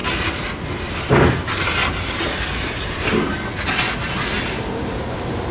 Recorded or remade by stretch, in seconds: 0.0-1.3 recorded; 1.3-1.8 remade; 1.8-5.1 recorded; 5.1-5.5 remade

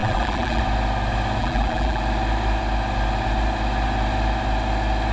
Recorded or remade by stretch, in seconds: 0.0-0.6 remade; 0.6-1.4 recorded; 1.4-2.0 remade; 2.0-5.1 recorded

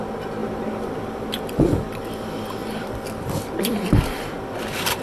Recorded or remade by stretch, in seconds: 0.0-0.4 recorded; 0.4-1.6 remade; 1.6-2.6 recorded; 2.6-5.0 remade

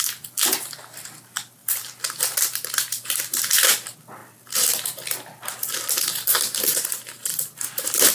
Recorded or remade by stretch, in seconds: 0.0-1.6 recorded; 1.6-3.7 remade; 3.7-4.2 recorded; 4.2-5.4 remade; 5.4-7.3 recorded; 7.3-8.1 remade

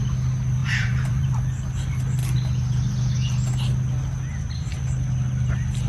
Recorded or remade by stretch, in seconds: 0.0-0.6 recorded; 0.6-1.4 remade; 1.4-5.9 recorded

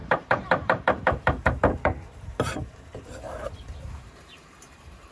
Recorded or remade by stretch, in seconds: 0.0-5.1 remade

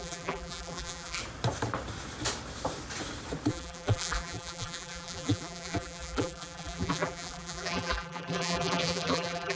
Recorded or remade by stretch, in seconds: 0.0-1.2 remade; 1.2-3.5 recorded; 3.5-9.6 remade